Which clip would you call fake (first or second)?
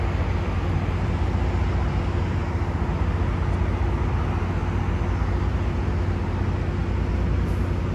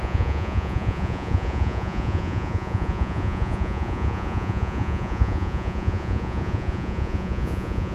second